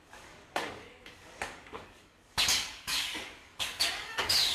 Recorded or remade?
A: remade